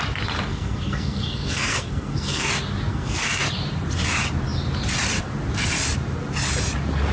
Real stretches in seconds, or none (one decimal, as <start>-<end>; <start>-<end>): 0.0-0.5; 2.5-2.9; 3.4-7.1